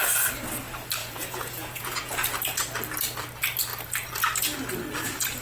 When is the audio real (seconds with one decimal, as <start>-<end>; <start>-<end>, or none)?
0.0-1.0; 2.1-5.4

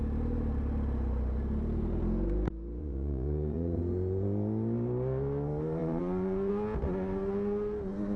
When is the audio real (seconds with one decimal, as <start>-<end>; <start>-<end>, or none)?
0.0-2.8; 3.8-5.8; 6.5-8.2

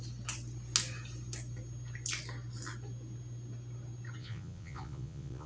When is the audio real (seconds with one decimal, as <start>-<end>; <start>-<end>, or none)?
0.0-4.2

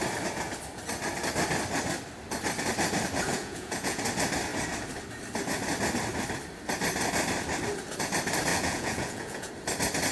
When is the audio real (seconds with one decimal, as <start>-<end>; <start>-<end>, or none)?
0.0-3.3; 4.0-8.5; 9.5-10.1

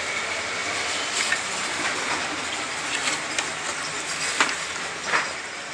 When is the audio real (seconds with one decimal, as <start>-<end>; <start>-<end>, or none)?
0.0-5.7